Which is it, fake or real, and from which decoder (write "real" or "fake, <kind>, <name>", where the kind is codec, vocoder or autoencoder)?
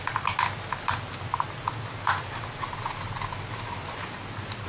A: real